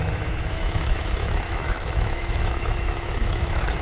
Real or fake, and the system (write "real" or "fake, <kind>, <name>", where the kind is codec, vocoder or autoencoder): fake, autoencoder, DAC-VAE